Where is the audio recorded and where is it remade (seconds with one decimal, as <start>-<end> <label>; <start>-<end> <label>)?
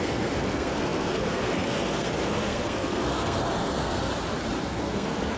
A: 0.0-4.1 remade; 4.1-4.6 recorded; 4.6-5.4 remade